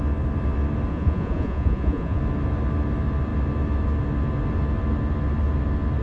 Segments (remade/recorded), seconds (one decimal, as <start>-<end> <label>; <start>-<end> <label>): 0.0-0.9 recorded; 0.9-2.2 remade; 2.2-6.0 recorded